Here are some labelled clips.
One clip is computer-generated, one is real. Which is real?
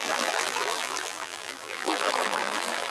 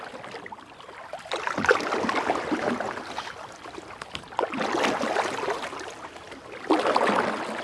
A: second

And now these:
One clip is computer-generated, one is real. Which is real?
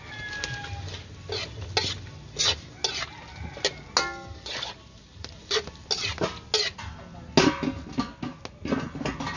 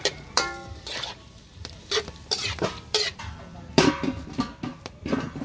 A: first